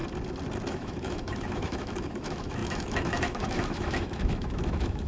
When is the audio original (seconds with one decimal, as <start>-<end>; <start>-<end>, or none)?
0.0-0.7